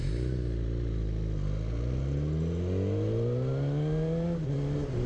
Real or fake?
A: real